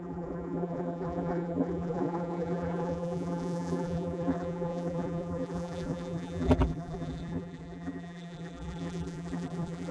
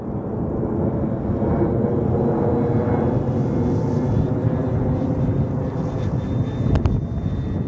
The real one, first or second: second